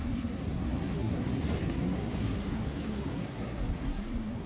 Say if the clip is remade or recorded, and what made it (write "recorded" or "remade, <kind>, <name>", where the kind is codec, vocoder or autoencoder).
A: remade, codec, SNAC